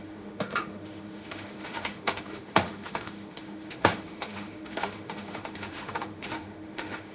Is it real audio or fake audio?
fake